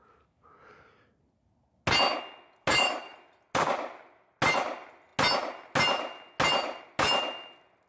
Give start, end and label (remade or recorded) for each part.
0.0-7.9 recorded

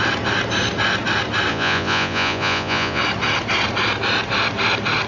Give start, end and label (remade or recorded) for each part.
0.0-1.5 recorded; 1.5-3.0 remade; 3.0-5.1 recorded

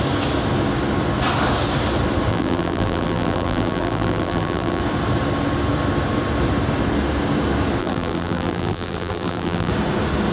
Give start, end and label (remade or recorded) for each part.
0.0-2.3 recorded; 2.3-4.8 remade; 4.8-7.8 recorded; 7.8-9.7 remade; 9.7-10.3 recorded